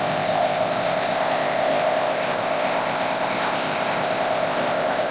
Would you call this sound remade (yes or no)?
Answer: yes